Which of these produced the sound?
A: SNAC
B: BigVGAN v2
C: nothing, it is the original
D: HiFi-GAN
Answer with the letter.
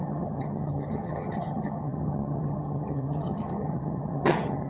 D